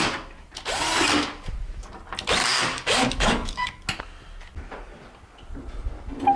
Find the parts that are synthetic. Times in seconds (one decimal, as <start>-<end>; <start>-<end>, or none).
2.4-3.8